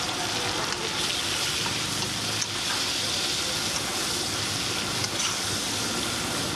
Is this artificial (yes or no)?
no